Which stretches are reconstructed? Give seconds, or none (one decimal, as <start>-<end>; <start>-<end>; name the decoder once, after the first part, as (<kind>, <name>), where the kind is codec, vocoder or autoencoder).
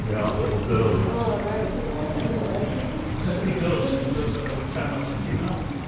none